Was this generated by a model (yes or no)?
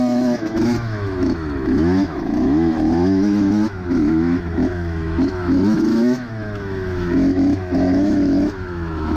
yes